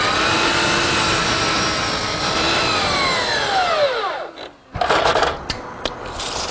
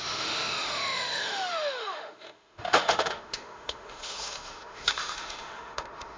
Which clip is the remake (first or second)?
second